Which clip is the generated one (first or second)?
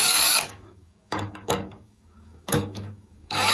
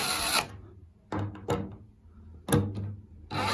first